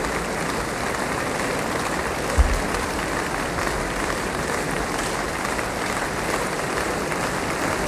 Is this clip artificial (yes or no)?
no